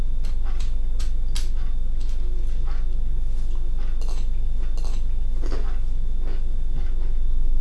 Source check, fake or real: real